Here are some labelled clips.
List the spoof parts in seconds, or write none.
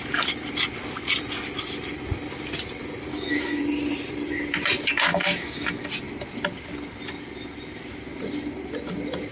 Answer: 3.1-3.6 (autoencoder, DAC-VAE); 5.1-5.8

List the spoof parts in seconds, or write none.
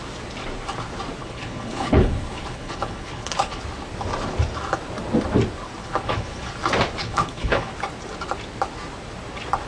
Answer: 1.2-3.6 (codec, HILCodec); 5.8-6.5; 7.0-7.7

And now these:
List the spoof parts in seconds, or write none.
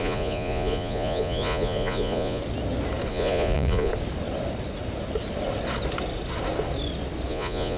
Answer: 0.0-2.4 (vocoder, Vocos); 3.1-3.9; 7.3-7.8